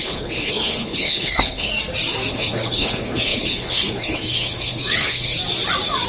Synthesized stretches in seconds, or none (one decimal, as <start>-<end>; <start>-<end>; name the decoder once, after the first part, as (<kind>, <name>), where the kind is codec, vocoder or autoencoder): 0.0-1.7 (codec, HILCodec); 2.3-5.3